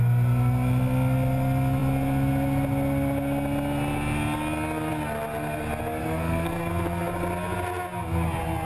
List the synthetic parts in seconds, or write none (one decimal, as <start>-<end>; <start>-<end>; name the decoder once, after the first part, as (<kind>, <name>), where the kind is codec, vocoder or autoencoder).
6.0-6.7 (codec, SNAC)

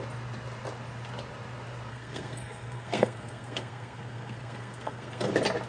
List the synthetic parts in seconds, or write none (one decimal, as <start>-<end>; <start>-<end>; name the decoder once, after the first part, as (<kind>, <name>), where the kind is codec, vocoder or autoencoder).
1.9-5.3 (codec, SNAC)

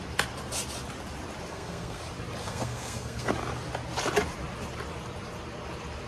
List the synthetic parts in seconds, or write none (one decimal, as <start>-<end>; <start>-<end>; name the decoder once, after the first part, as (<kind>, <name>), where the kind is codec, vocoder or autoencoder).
1.5-2.0 (codec, SNAC); 2.4-3.3

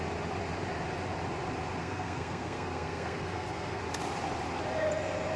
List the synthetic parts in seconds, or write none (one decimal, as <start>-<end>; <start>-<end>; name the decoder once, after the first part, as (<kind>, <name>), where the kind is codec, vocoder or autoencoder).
1.8-3.8 (codec, SNAC)